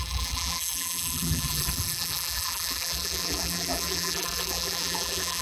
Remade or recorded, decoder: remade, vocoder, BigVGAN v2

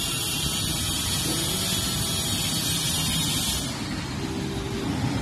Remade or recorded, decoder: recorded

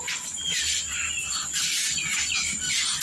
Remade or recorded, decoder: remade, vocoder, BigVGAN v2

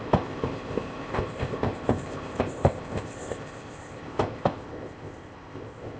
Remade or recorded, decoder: remade, codec, ZipCodec